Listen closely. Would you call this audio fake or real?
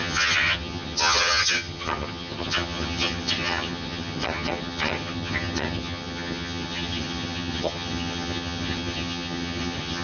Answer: fake